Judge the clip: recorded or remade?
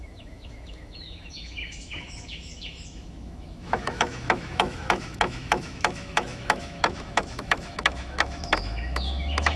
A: remade